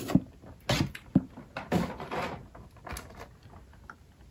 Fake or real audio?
real